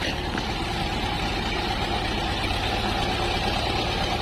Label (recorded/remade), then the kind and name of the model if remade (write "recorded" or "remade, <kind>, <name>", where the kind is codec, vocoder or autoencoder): recorded